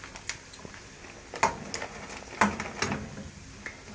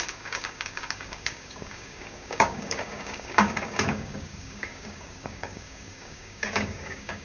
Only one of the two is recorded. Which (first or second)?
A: first